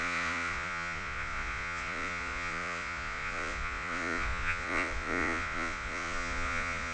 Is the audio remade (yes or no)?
yes